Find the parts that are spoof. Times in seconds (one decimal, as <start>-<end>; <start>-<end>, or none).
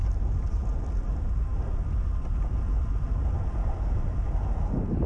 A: none